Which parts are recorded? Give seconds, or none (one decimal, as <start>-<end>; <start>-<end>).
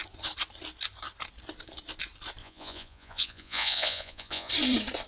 0.0-2.4; 4.5-5.1